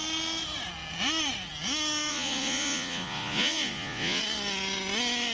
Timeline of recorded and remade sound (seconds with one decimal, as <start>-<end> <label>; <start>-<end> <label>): 0.0-2.1 recorded; 2.1-4.2 remade; 4.2-5.3 recorded